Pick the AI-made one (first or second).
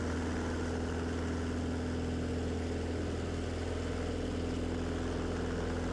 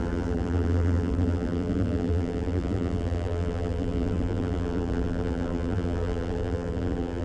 second